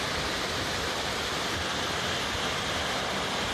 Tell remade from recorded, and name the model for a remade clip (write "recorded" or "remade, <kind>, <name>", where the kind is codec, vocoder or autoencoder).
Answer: remade, vocoder, BigVGAN v2